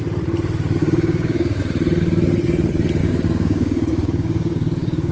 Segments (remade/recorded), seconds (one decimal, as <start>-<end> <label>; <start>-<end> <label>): 0.0-0.8 recorded; 0.8-1.6 remade; 1.6-3.0 recorded; 3.0-5.1 remade